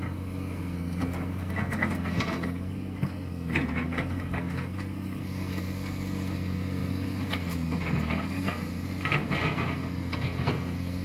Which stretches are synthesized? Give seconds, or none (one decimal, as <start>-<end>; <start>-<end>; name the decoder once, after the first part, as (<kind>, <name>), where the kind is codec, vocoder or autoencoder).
0.0-11.0 (codec, SNAC)